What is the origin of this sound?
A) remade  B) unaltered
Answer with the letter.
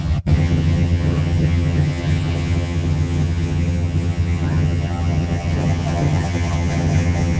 A